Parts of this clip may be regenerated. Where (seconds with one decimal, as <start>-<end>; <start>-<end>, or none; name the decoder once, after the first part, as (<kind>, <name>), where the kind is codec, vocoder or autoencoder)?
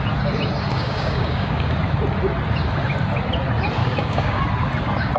0.7-1.7 (codec, DAC); 3.8-4.4